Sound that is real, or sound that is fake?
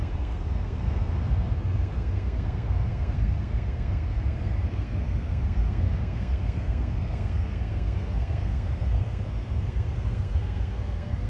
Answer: fake